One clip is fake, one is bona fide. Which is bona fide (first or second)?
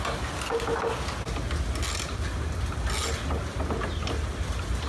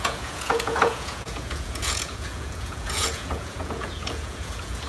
first